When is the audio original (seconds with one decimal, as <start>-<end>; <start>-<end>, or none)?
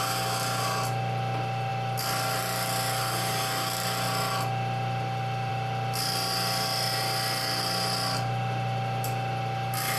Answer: 0.0-10.0